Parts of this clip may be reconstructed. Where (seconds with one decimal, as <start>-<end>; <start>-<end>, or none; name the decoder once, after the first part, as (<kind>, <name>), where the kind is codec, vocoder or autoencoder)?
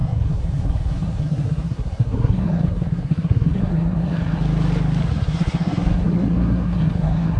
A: 0.0-4.4 (codec, SNAC); 5.1-7.4